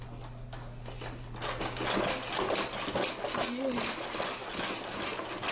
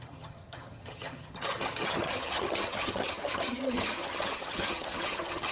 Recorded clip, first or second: first